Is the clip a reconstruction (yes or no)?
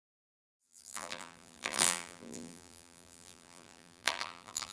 yes